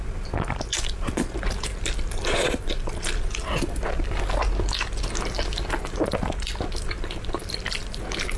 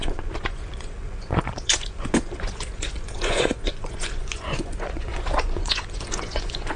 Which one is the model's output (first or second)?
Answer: second